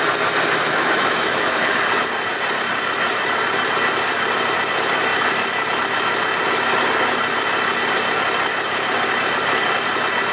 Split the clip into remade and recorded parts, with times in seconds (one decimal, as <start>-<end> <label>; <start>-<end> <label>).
0.0-0.7 recorded; 0.7-1.8 remade; 1.8-10.3 recorded